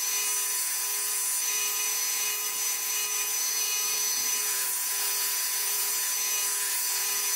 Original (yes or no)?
no